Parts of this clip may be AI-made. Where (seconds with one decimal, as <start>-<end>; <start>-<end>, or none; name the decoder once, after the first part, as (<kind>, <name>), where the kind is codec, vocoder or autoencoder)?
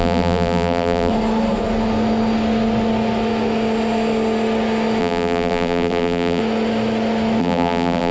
0.0-1.1 (vocoder, BigVGAN v2); 5.0-6.4; 7.4-8.1